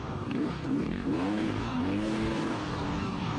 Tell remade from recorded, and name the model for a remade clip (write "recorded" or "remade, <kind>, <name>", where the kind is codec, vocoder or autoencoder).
remade, codec, DAC